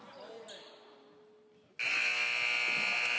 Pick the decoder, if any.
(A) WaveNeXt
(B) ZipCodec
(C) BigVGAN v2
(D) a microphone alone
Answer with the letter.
D